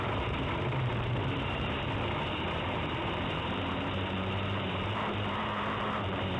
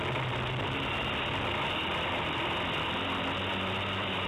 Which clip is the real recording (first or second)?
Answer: second